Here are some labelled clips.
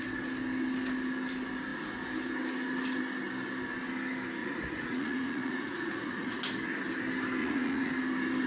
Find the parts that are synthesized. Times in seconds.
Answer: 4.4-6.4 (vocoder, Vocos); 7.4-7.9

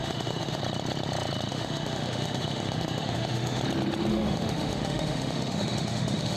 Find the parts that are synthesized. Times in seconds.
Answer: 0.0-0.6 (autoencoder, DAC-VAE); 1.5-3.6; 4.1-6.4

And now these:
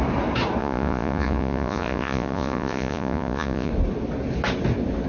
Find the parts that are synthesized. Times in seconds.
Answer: 0.6-3.7 (vocoder, Vocos)

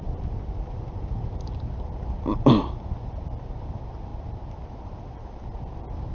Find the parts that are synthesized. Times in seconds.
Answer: none

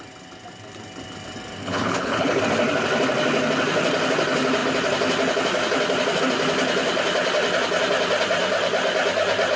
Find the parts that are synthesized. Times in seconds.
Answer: 1.6-2.4 (codec, HILCodec)